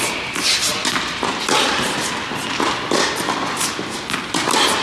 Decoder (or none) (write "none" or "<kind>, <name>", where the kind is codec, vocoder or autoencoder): none